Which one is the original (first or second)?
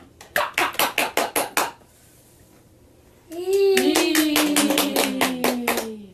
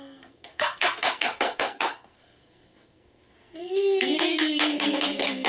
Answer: first